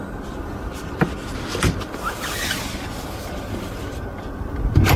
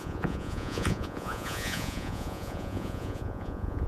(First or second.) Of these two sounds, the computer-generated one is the second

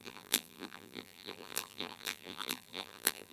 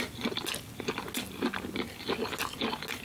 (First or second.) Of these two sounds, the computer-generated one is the first